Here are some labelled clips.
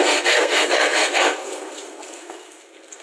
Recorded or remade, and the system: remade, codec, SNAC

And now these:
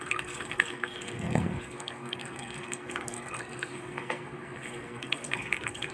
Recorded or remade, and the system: remade, codec, SNAC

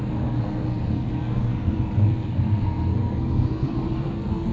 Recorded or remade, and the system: remade, codec, SNAC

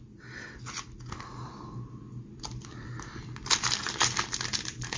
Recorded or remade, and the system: recorded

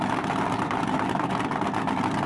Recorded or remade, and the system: recorded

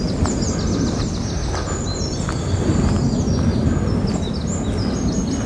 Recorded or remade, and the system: recorded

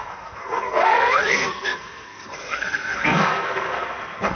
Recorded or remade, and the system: remade, codec, SNAC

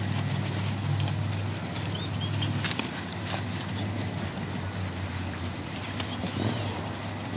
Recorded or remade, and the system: recorded